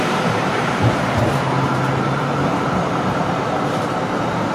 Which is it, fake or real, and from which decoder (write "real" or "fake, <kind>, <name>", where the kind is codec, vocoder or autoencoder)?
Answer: fake, vocoder, BigVGAN v2